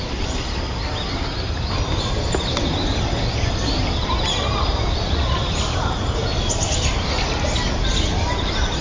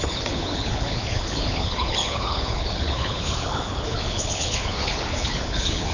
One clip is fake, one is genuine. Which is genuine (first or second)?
first